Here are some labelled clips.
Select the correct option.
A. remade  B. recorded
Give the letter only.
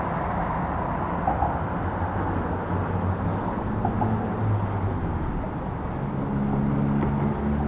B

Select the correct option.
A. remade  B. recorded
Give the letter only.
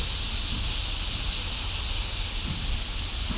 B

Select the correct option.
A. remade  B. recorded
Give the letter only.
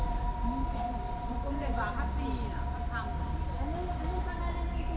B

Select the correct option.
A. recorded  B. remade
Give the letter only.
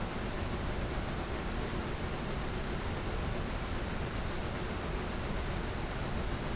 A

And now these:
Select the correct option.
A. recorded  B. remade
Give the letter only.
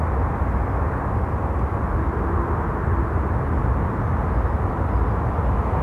A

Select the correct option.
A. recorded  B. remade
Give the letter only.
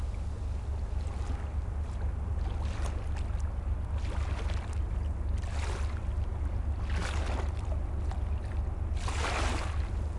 A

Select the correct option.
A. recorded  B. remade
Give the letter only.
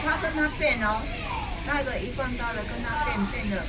A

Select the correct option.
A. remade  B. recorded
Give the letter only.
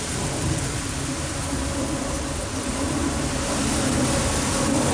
B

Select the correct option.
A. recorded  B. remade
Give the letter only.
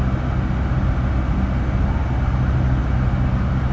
A